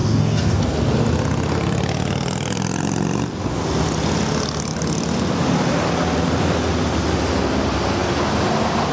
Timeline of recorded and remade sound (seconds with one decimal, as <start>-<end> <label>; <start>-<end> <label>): 0.0-0.6 remade; 0.6-8.9 recorded